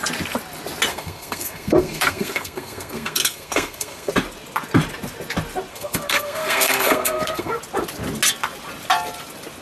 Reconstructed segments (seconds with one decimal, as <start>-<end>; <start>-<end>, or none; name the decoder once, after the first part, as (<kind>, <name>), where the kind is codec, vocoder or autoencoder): 0.9-4.1 (codec, SNAC); 5.7-7.6